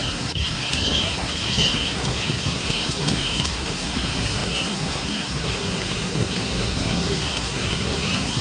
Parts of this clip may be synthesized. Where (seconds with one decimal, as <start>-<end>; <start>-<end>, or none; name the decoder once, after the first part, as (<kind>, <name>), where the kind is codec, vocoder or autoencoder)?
0.0-8.4 (codec, SNAC)

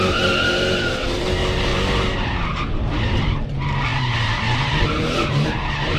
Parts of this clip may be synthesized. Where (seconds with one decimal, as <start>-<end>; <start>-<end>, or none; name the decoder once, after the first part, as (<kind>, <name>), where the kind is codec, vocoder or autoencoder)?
0.0-6.0 (vocoder, BigVGAN v2)

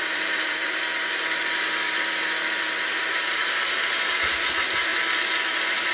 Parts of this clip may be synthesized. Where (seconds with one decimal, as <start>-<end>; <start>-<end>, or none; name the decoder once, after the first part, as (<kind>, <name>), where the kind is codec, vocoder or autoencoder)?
0.0-4.9 (vocoder, BigVGAN v2); 5.5-5.9

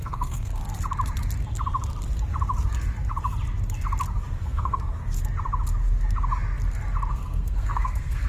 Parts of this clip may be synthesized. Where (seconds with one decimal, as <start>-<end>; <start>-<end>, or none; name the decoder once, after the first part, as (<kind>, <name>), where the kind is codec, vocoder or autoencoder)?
0.0-0.6 (codec, SNAC); 4.4-5.0; 7.1-8.3

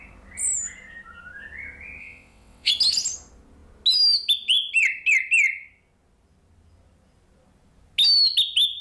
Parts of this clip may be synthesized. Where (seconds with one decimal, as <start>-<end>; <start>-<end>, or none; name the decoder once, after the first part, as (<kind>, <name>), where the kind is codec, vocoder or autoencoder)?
2.0-2.7 (vocoder, WaveNeXt)